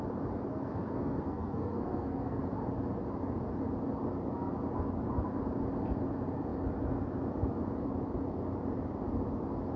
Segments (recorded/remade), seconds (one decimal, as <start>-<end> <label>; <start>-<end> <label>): 0.0-0.5 recorded; 0.5-2.4 remade; 2.4-9.8 recorded